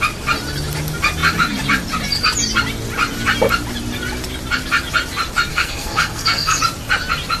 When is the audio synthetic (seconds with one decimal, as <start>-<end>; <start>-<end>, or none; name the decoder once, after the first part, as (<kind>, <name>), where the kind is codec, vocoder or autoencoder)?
5.5-6.6 (codec, SNAC)

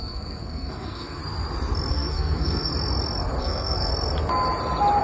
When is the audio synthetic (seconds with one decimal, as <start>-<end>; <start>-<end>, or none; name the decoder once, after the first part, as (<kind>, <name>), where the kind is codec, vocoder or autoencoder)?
0.0-1.2 (codec, SNAC); 1.9-2.7; 3.4-3.9

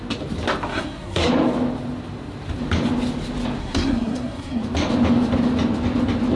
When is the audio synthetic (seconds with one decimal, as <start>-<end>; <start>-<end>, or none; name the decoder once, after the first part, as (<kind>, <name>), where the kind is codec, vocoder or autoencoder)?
0.7-1.3 (codec, SNAC); 3.6-4.6